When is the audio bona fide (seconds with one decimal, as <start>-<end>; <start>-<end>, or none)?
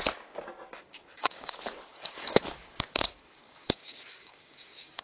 0.0-0.8; 1.5-1.9